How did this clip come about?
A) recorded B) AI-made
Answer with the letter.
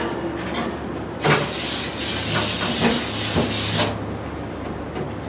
A